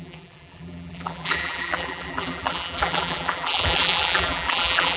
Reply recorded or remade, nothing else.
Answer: remade